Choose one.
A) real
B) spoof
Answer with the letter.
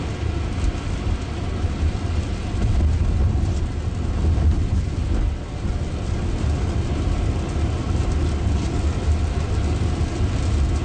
A